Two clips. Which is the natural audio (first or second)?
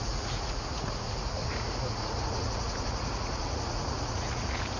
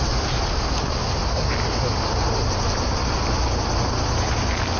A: second